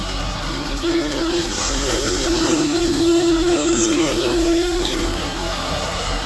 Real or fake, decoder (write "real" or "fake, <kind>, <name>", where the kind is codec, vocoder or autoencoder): fake, codec, SNAC